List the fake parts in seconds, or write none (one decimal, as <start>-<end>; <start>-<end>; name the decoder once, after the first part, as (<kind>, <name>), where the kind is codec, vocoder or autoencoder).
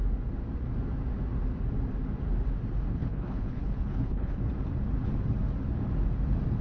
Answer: 2.9-4.4 (codec, HILCodec)